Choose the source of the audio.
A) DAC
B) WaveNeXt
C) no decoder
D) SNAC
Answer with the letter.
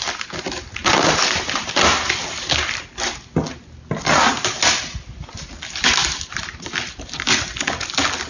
C